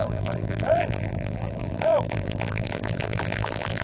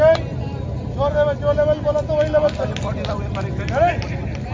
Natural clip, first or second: second